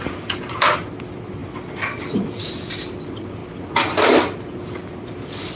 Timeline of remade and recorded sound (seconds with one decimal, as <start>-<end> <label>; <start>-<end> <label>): 0.0-5.6 recorded